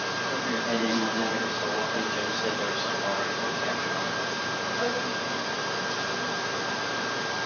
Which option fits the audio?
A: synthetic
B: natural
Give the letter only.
A